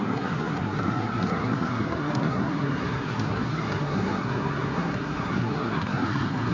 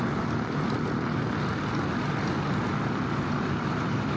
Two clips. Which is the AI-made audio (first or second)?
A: first